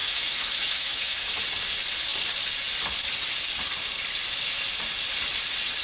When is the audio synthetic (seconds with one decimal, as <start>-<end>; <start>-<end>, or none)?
0.0-1.4